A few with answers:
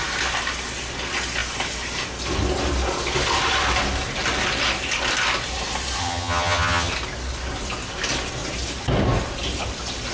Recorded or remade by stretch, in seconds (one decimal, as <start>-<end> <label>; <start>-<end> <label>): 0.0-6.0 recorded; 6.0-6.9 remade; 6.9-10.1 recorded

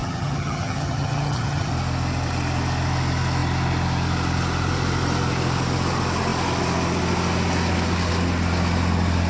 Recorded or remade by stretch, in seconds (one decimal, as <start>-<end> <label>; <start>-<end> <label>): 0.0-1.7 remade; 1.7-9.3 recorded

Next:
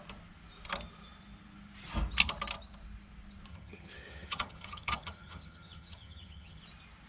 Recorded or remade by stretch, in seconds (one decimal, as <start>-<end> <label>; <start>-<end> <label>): 0.0-3.5 recorded; 3.5-6.6 remade; 6.6-7.1 recorded

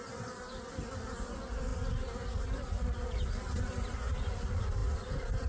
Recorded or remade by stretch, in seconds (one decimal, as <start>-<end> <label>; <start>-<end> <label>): 0.0-5.5 recorded

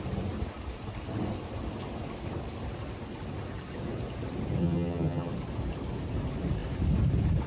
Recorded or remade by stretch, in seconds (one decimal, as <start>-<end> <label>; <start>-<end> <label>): 0.0-4.6 recorded; 4.6-5.3 remade; 5.3-7.5 recorded